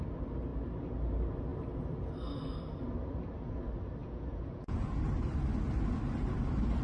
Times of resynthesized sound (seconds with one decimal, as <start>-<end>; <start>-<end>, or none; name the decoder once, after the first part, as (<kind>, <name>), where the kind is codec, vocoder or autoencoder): 4.0-5.0 (vocoder, Vocos)